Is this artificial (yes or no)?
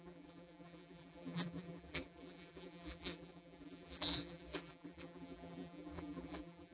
yes